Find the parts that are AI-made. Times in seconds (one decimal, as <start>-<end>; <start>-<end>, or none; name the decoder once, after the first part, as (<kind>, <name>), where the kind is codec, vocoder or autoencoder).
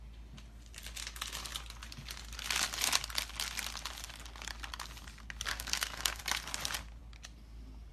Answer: 5.5-6.2 (codec, SNAC)